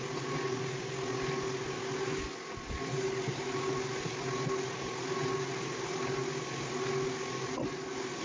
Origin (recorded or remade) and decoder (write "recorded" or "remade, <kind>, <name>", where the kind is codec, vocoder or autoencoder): recorded